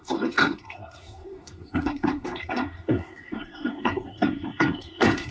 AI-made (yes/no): yes